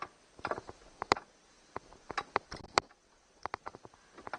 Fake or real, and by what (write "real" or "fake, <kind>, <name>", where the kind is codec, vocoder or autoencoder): real